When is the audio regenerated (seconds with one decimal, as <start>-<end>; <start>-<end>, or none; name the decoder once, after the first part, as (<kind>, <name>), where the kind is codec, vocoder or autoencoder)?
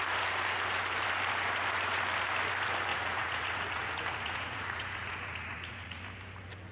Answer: 2.9-6.0 (vocoder, Vocos)